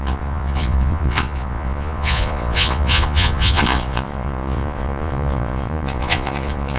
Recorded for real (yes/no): no